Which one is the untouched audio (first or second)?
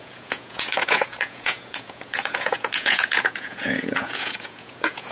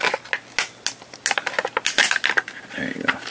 second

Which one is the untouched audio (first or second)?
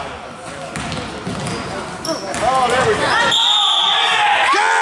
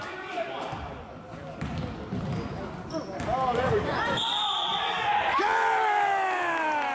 first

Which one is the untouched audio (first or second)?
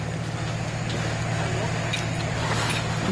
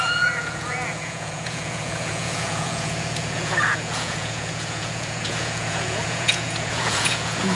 first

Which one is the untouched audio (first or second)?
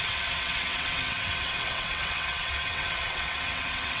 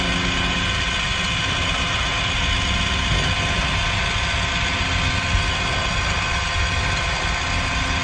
second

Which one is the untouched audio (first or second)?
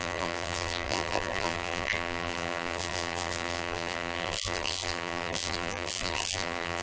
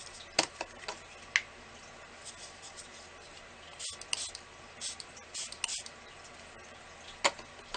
second